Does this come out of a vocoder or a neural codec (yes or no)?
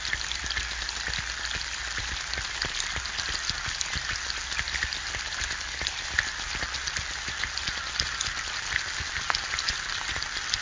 no